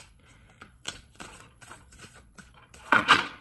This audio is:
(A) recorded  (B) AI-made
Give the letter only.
B